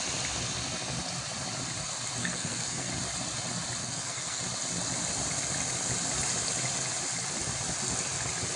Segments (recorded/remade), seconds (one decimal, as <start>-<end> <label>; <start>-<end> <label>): 0.0-2.2 recorded; 2.2-2.9 remade; 2.9-3.8 recorded; 3.8-4.4 remade; 4.4-8.6 recorded